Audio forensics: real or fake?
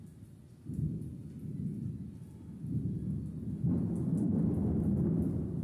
real